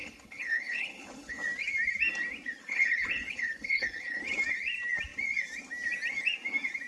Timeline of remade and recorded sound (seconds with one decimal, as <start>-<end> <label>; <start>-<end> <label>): 0.0-1.4 remade; 1.4-2.6 recorded; 2.6-4.2 remade; 4.2-6.9 recorded